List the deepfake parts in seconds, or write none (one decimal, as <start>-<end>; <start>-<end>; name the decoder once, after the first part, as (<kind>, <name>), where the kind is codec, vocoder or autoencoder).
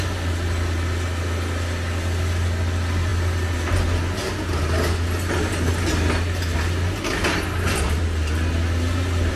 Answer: none